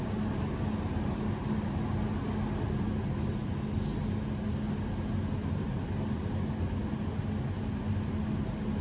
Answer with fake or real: real